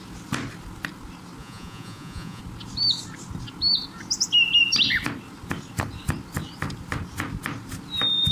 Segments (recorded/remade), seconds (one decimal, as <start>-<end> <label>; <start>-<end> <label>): 0.0-1.4 recorded; 1.4-2.4 remade; 2.4-8.3 recorded